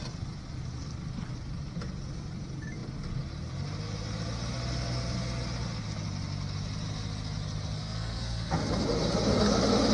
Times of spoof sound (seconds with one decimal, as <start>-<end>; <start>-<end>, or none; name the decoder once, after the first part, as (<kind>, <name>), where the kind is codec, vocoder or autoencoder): 7.8-8.7 (codec, SNAC)